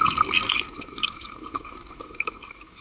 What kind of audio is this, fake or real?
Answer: fake